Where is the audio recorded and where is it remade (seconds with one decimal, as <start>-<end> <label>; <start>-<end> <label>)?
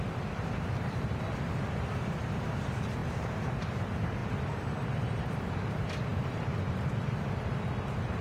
0.0-3.0 recorded; 3.0-3.8 remade; 3.8-6.1 recorded; 6.1-6.9 remade; 6.9-8.2 recorded